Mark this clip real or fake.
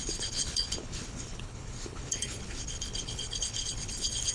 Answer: fake